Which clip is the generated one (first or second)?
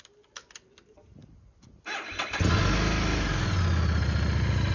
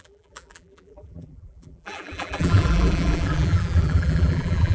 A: second